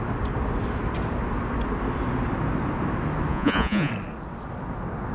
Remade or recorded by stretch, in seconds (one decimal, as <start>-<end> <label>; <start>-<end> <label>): 0.0-3.3 recorded; 3.3-3.9 remade; 3.9-5.1 recorded